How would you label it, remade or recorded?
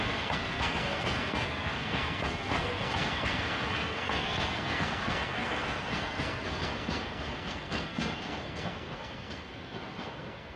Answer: remade